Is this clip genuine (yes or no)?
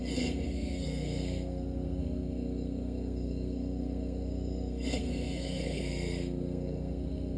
no